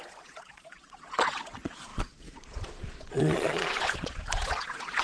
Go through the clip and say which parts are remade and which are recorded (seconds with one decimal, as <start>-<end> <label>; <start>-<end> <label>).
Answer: 0.0-5.0 remade